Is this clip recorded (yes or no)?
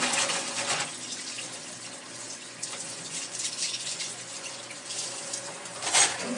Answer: no